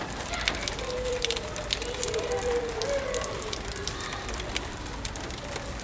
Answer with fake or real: fake